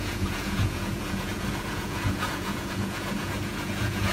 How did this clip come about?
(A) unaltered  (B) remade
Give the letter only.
B